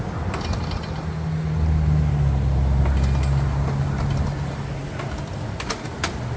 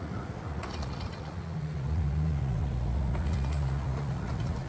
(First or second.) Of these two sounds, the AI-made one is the second